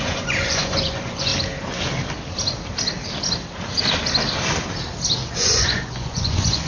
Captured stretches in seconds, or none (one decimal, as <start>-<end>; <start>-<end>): 1.3-5.3